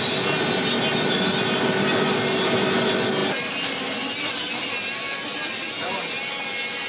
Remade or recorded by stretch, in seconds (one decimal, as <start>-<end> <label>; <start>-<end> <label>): 0.0-6.9 recorded